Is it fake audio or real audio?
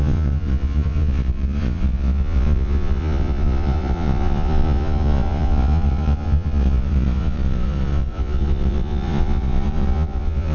fake